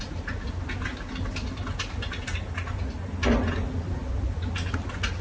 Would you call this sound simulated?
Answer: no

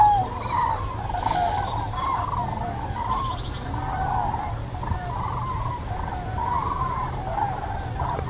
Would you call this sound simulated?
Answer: no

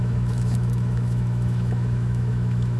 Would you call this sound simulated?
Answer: yes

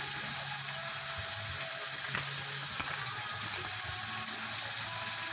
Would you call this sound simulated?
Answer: no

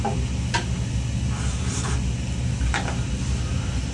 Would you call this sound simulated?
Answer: no